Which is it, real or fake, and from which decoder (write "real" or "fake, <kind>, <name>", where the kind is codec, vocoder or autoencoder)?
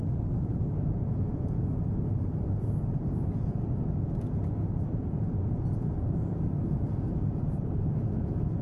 fake, vocoder, Vocos